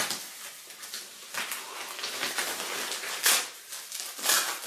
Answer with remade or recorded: recorded